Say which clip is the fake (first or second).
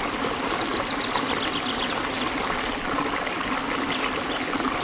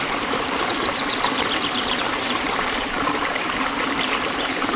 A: second